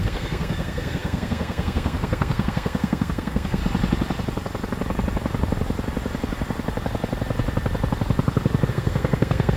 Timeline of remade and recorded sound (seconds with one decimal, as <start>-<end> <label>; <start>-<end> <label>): 0.0-3.6 remade; 3.6-8.7 recorded; 8.7-9.6 remade